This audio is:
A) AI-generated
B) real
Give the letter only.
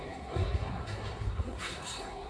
A